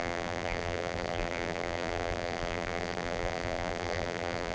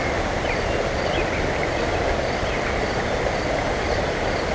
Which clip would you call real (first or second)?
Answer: second